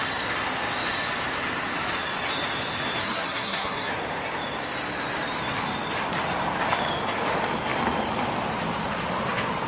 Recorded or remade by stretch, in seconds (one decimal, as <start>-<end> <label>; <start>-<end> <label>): 0.0-3.0 recorded; 3.0-3.9 remade; 3.9-9.7 recorded